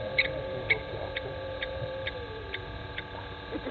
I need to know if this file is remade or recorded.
remade